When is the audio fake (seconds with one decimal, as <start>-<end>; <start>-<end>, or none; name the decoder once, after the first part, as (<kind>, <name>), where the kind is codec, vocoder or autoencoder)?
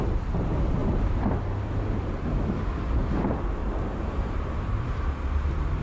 3.6-5.1 (vocoder, BigVGAN v2)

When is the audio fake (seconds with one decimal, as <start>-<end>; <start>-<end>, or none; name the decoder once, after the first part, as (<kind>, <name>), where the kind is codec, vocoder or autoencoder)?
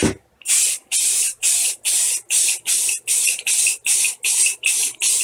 0.9-1.8 (vocoder, BigVGAN v2)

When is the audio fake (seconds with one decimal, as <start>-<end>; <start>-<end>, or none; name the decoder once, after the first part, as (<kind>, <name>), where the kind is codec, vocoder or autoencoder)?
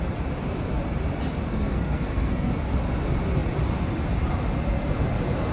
1.5-2.5 (codec, SNAC)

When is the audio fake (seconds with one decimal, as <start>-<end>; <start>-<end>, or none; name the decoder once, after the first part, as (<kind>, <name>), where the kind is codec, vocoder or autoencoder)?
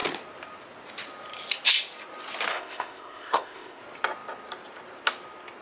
2.5-3.8 (codec, ZipCodec)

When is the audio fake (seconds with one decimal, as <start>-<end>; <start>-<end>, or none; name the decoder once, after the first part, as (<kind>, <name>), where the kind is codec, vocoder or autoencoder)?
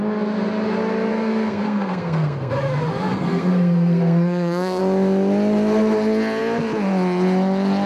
1.1-2.5 (codec, SNAC); 3.1-4.8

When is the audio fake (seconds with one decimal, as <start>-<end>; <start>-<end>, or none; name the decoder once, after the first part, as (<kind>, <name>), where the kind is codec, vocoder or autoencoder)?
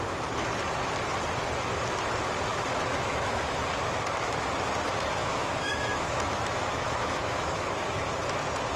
2.5-3.6 (autoencoder, DAC-VAE); 5.2-7.7